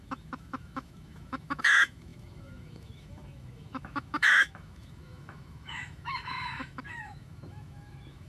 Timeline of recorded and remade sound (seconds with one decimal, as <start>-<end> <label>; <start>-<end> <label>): 0.0-8.3 remade